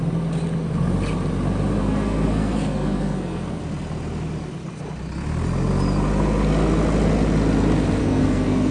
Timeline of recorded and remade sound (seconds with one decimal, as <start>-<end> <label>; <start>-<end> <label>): 0.0-1.8 recorded; 1.8-3.6 remade; 3.6-8.0 recorded; 8.0-8.7 remade